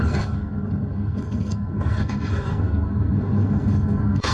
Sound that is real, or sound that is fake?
fake